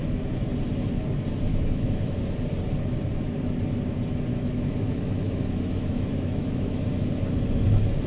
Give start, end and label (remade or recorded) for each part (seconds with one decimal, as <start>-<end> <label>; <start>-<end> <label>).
0.0-1.5 recorded; 1.5-2.2 remade; 2.2-4.3 recorded; 4.3-6.8 remade; 6.8-8.1 recorded